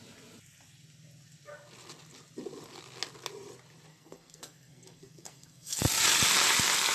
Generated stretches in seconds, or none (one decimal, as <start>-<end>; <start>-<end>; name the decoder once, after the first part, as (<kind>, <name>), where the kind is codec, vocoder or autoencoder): 3.9-5.8 (codec, SNAC)